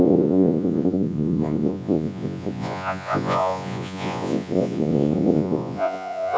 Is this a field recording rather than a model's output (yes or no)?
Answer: no